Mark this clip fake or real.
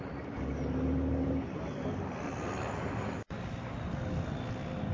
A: real